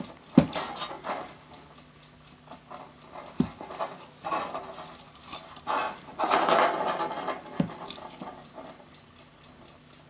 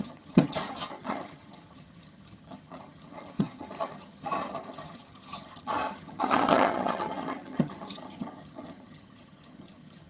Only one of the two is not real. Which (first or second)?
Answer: second